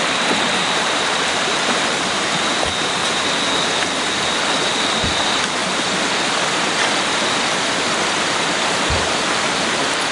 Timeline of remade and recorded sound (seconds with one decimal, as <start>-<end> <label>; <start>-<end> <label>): 0.0-3.0 remade; 3.0-3.8 recorded; 3.8-5.6 remade; 5.6-8.1 recorded; 8.1-10.1 remade